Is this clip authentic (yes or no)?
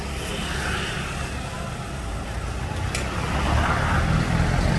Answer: yes